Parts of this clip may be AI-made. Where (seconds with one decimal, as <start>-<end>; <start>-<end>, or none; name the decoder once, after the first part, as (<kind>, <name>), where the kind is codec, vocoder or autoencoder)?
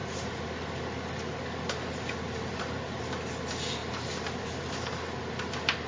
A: none